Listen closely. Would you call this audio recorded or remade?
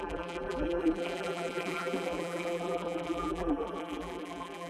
remade